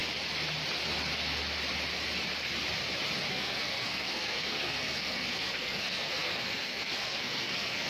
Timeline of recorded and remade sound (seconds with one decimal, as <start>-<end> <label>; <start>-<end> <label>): 0.0-3.3 recorded; 3.3-7.9 remade